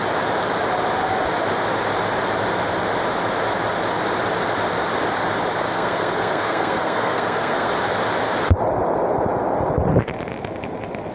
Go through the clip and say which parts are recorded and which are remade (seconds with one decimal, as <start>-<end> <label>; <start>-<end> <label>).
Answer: 0.0-5.7 recorded; 5.7-7.7 remade; 7.7-11.1 recorded